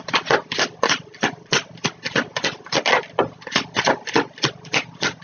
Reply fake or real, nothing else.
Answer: real